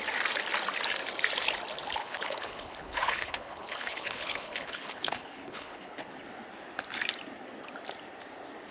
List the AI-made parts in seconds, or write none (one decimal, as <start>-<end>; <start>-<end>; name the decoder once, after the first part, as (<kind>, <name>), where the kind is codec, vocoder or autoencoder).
2.0-6.1 (codec, HILCodec)